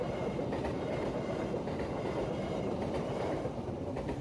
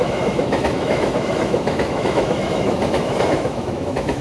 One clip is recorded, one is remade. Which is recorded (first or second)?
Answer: first